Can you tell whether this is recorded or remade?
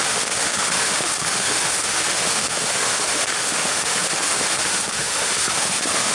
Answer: remade